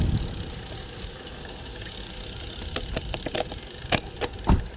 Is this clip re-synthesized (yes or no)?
no